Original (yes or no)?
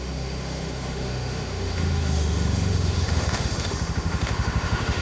no